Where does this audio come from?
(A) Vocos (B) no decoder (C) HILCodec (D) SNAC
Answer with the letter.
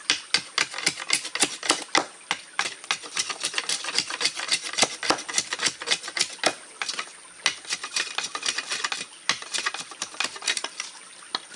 B